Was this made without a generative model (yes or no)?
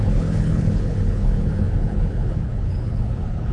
no